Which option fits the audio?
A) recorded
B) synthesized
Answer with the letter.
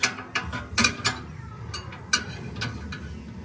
A